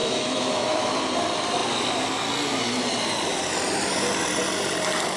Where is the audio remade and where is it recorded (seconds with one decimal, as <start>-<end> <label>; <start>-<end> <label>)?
0.0-1.0 remade; 1.0-5.2 recorded